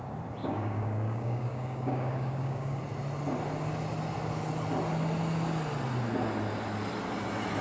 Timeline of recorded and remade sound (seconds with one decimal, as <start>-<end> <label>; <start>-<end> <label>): 0.0-0.4 recorded; 0.4-2.8 remade; 2.8-7.6 recorded

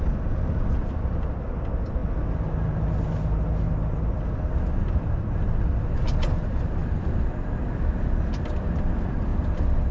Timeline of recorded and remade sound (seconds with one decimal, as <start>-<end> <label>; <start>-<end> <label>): 0.0-9.9 recorded

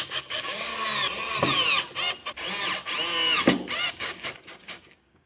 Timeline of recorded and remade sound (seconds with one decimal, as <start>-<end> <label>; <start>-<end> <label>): 0.0-0.7 remade; 0.7-3.9 recorded; 3.9-5.3 remade

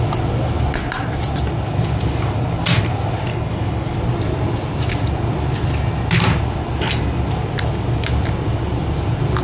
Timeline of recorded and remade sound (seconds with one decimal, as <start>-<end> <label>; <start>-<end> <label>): 0.0-3.3 recorded; 3.3-4.0 remade; 4.0-9.4 recorded

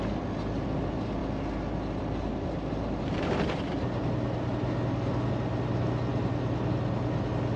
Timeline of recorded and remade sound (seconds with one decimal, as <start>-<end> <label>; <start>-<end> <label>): 0.0-7.6 recorded

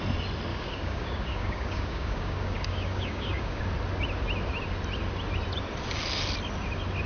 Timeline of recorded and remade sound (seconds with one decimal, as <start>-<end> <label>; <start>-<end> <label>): 0.0-0.5 recorded; 0.5-3.6 remade; 3.6-7.1 recorded